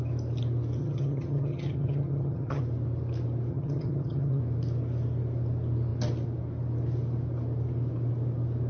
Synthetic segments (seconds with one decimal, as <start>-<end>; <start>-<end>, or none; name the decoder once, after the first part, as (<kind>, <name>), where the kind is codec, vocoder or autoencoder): 0.8-2.6 (vocoder, HiFi-GAN); 3.5-4.4